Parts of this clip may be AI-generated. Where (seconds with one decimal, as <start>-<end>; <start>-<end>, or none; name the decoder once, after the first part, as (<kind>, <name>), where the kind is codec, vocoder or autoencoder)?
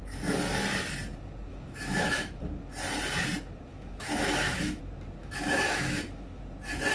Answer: 1.5-2.4 (autoencoder, DAC-VAE); 3.7-4.8; 5.2-6.4